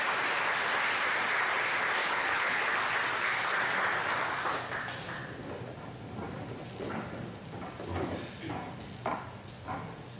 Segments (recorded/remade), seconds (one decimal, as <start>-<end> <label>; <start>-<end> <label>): 0.0-2.0 recorded; 2.0-2.6 remade; 2.6-10.2 recorded